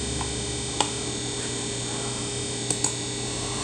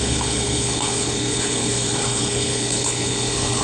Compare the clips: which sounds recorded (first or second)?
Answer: first